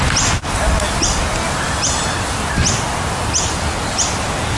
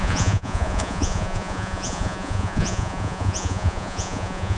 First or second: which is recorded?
first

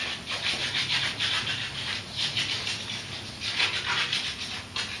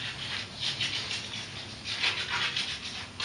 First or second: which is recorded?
second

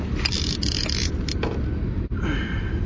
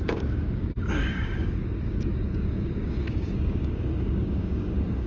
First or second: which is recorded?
first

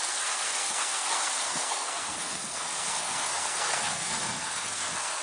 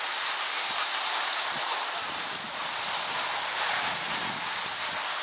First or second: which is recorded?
second